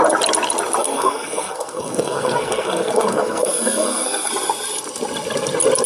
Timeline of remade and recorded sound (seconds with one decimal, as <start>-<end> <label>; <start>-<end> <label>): 0.0-0.8 recorded; 0.8-4.3 remade; 4.3-5.9 recorded